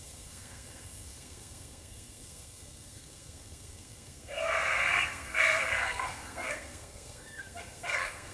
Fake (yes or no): yes